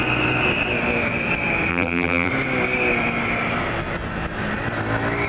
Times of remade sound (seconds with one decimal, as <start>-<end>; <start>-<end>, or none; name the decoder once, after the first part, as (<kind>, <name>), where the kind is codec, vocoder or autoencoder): 1.7-2.3 (vocoder, BigVGAN v2)